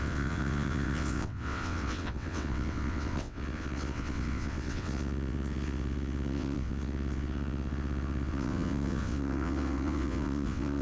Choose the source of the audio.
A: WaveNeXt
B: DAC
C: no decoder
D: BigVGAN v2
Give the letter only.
A